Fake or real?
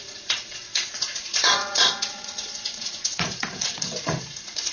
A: fake